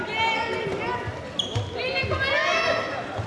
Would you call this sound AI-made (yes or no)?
no